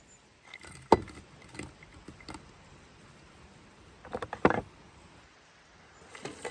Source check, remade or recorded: recorded